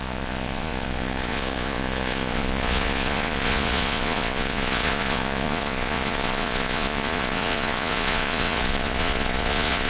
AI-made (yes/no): yes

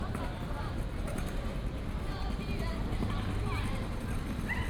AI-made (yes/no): no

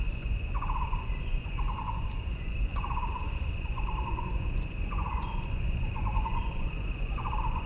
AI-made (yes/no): yes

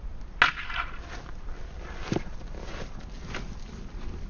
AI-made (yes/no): no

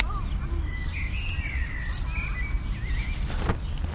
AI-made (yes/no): no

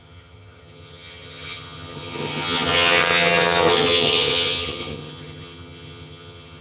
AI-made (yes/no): yes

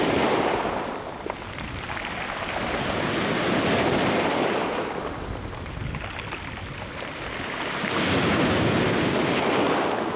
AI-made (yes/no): no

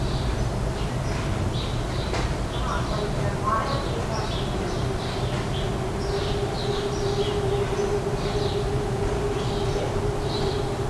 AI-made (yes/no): no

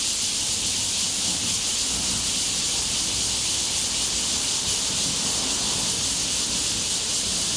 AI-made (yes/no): no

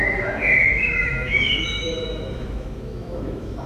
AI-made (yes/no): yes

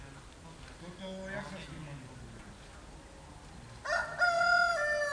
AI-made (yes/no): no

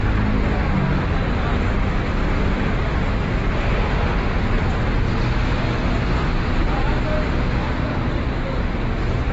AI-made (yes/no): no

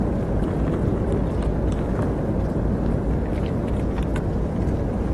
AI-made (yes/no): no